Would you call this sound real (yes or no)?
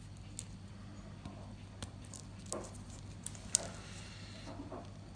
yes